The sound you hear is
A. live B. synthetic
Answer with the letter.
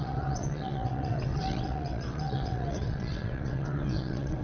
B